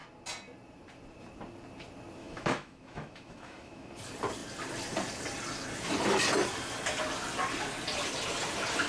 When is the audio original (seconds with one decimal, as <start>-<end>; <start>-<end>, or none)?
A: 0.0-2.2; 3.9-8.9